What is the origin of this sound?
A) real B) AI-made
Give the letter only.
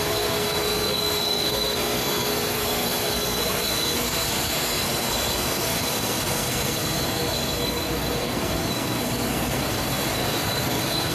B